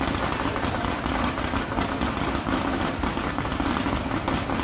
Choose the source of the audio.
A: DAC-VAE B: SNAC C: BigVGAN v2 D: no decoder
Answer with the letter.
D